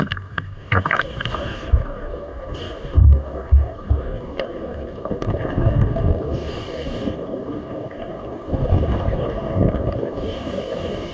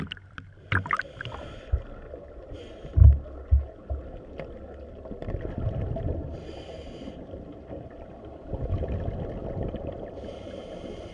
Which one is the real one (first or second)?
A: second